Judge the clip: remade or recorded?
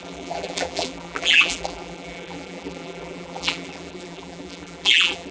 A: remade